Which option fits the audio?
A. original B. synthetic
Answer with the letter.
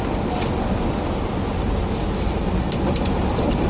A